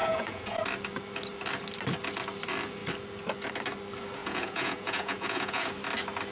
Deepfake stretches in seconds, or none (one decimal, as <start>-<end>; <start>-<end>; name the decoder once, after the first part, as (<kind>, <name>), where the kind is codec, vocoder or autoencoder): 0.0-0.6 (vocoder, Vocos); 4.2-5.7